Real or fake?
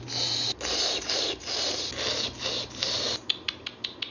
real